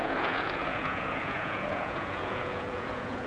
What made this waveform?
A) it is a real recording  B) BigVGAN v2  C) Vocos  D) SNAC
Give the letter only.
C